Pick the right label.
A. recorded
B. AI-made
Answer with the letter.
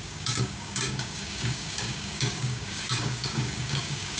B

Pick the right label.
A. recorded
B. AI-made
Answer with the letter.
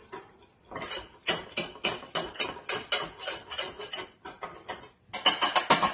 A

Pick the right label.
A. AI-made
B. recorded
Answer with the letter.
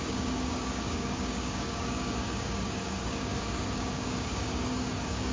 A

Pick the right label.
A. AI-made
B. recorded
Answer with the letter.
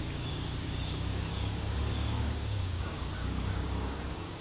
A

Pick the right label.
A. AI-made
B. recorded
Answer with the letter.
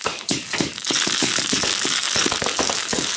A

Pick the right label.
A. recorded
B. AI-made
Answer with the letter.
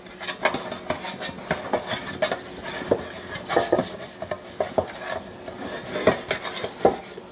A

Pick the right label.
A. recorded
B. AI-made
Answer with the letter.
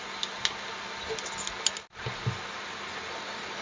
A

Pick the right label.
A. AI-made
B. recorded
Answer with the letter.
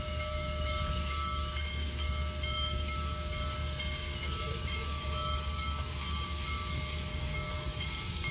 A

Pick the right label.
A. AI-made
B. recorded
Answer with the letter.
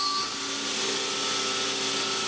B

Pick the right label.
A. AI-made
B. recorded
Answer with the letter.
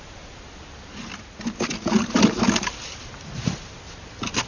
B